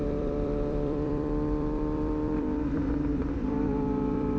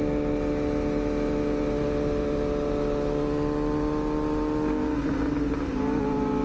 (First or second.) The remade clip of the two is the first